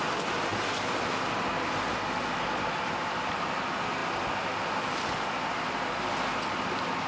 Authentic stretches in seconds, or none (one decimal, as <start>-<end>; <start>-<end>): 0.0-7.1